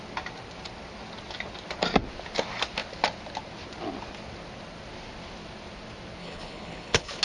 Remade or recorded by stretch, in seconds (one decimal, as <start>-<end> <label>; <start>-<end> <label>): 0.0-6.2 recorded; 6.2-7.2 remade

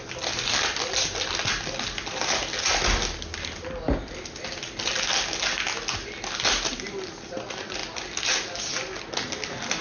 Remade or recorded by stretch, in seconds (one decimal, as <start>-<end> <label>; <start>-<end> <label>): 0.0-9.8 recorded